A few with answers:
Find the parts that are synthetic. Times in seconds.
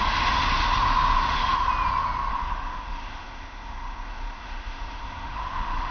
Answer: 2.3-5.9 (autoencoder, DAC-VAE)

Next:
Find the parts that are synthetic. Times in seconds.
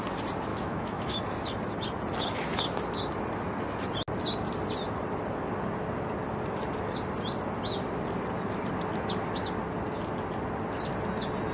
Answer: 0.5-1.2 (autoencoder, DAC-VAE)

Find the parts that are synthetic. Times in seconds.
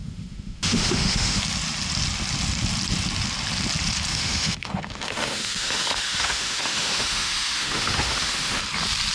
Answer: 0.0-1.4 (autoencoder, DAC-VAE); 4.1-8.6